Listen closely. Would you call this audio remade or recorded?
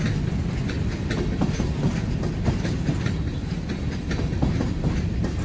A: recorded